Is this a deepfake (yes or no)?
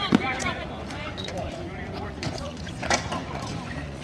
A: yes